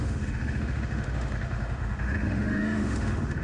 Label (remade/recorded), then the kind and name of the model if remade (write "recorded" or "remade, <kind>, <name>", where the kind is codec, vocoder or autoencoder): remade, autoencoder, DAC-VAE